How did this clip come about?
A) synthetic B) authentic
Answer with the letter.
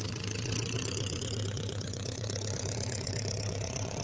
A